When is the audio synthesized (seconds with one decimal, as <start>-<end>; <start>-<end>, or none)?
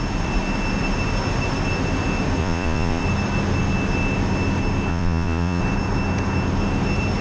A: 2.4-3.0; 4.9-5.6